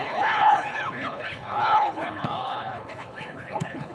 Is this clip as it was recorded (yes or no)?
no